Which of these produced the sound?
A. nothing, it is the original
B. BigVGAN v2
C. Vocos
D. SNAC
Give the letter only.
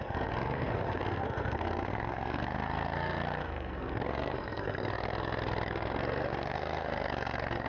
D